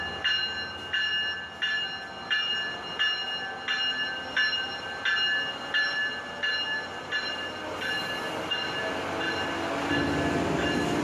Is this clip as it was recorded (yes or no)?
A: yes